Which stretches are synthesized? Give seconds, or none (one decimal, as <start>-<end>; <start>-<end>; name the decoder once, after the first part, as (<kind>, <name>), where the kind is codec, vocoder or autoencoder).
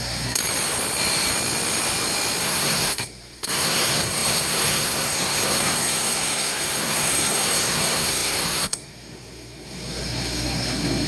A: 0.0-0.4 (codec, SNAC); 2.4-11.1